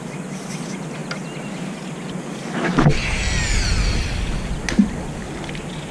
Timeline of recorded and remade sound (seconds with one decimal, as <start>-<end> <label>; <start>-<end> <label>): 0.0-5.9 recorded